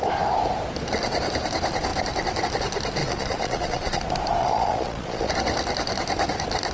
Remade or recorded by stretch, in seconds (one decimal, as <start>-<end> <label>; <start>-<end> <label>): 0.0-3.0 recorded; 3.0-4.0 remade; 4.0-4.4 recorded; 4.4-5.3 remade; 5.3-6.7 recorded